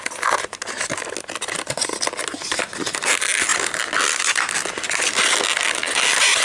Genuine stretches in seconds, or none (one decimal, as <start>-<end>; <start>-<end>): 0.0-6.4